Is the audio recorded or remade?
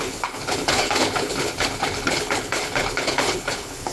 remade